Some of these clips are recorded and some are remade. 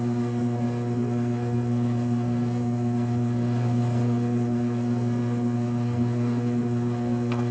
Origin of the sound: remade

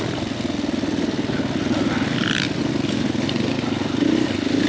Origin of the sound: recorded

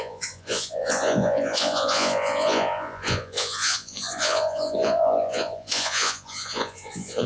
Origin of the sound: remade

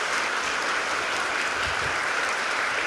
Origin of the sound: remade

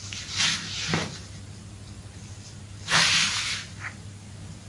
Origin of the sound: recorded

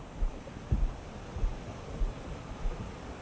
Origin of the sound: recorded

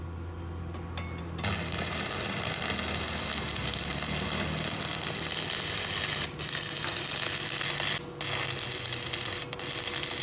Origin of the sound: recorded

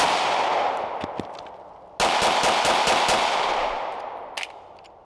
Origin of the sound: recorded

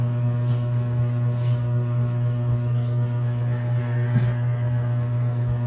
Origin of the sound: remade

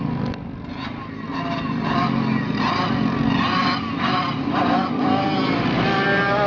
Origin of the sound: recorded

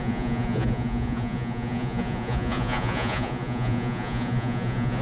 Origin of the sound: remade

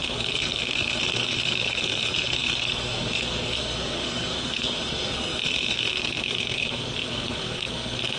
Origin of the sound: remade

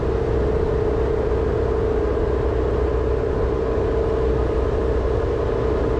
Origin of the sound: recorded